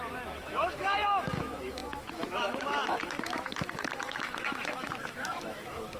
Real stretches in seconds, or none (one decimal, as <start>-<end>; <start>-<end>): none